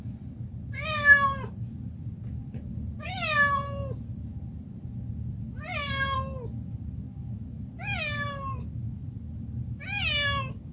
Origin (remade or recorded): recorded